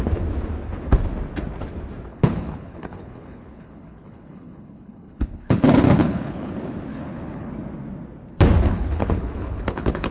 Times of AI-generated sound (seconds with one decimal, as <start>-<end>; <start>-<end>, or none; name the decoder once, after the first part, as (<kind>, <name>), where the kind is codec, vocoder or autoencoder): 2.1-6.5 (codec, HILCodec); 6.9-7.5; 8.7-10.1